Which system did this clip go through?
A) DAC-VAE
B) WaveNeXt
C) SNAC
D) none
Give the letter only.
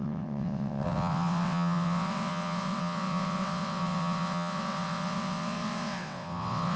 B